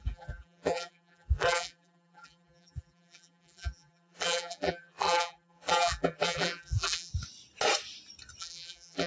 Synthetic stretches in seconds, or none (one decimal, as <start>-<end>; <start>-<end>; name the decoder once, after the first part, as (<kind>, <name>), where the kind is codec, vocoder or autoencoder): 0.0-7.1 (vocoder, BigVGAN v2); 8.4-9.1